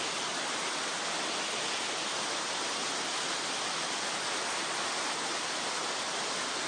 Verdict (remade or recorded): recorded